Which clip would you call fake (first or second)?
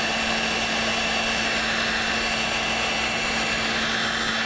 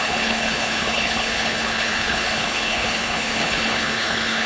second